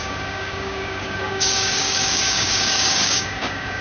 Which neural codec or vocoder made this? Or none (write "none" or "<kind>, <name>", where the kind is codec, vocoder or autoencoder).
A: codec, DAC